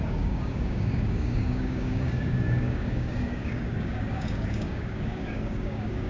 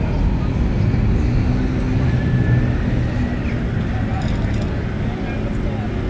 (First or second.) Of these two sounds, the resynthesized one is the first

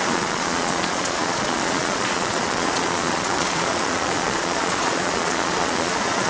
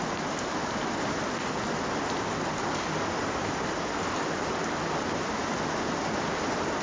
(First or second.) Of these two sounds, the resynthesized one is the first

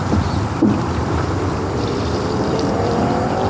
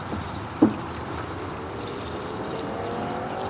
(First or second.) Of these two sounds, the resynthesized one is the first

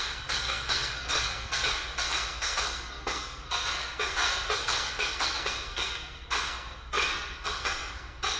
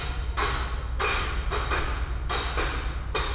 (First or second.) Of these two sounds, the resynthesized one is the first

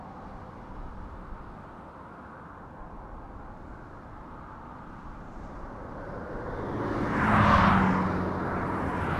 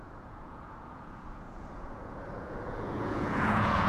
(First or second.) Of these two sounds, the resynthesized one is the second